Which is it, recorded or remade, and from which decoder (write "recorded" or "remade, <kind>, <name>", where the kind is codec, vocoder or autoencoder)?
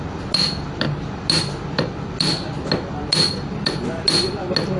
recorded